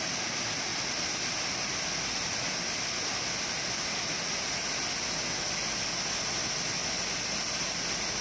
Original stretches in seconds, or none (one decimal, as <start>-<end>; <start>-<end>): 0.0-8.2

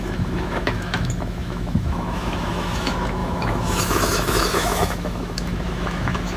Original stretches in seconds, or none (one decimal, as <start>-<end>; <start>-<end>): none

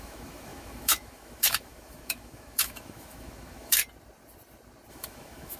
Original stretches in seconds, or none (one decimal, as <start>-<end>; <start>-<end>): 3.8-4.9